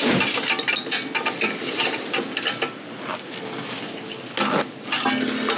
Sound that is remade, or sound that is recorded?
recorded